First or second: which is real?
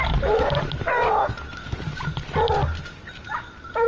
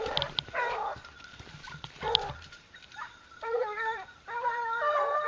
first